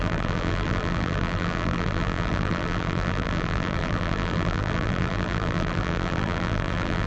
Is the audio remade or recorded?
remade